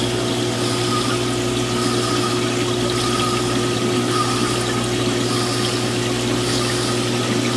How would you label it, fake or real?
real